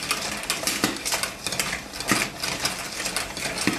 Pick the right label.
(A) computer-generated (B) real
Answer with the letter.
B